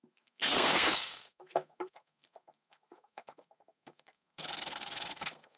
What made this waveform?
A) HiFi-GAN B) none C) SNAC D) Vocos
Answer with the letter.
C